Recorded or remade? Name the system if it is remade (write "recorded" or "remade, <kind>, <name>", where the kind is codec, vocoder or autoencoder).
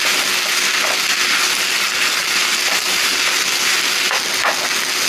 recorded